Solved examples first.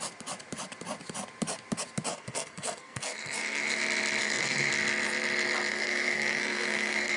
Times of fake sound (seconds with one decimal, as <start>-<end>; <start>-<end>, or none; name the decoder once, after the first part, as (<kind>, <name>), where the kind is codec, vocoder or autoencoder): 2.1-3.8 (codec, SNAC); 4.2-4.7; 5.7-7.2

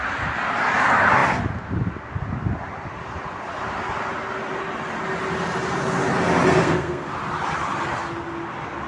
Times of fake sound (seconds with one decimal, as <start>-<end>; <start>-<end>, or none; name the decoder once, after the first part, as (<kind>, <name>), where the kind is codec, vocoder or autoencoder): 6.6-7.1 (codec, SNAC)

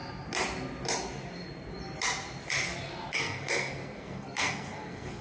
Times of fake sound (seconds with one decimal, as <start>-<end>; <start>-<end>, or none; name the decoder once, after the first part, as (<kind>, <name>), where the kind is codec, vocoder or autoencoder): 3.1-5.2 (codec, SNAC)

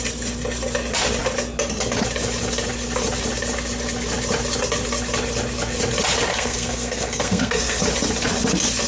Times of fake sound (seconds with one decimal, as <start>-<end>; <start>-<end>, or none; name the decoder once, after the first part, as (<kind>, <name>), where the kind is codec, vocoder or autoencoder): 6.3-7.8 (codec, SNAC)

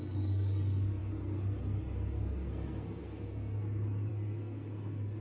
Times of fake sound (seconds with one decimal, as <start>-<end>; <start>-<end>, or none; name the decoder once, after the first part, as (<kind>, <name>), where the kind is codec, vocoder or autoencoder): 0.0-5.2 (codec, SNAC)

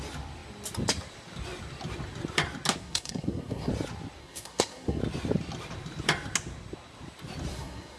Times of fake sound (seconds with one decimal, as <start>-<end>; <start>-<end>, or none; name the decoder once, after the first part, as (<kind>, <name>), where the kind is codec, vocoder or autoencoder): 2.8-3.7 (codec, SNAC); 4.2-5.0; 7.5-8.0